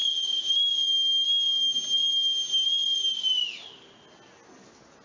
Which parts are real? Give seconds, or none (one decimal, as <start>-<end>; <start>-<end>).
0.0-5.0

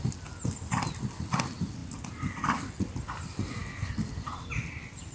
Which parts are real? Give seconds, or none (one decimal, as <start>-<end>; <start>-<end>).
0.0-5.1